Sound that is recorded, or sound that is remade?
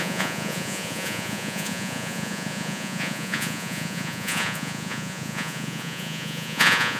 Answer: remade